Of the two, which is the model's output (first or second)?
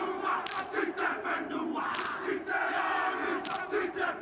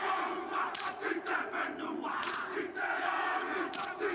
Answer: second